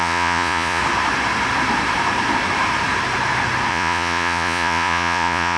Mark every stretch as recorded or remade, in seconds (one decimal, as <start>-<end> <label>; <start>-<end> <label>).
0.0-0.8 remade; 0.8-3.7 recorded; 3.7-5.6 remade